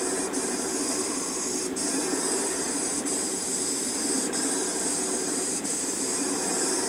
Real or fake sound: fake